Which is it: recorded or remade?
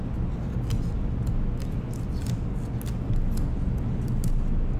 recorded